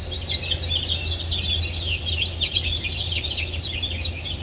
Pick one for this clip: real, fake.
real